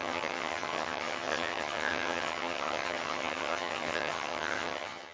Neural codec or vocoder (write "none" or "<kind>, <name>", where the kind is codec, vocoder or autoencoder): vocoder, HiFi-GAN